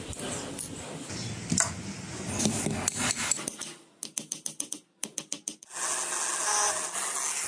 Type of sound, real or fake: real